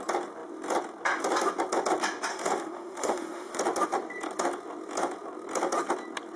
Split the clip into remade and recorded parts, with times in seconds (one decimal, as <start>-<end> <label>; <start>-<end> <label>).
0.0-2.3 recorded; 2.3-3.6 remade; 3.6-6.4 recorded